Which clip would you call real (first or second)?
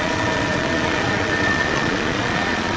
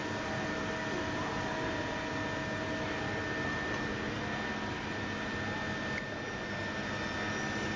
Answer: second